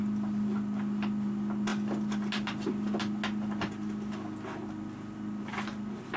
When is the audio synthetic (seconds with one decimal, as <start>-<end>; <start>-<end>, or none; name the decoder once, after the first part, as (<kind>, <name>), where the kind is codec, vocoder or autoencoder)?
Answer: none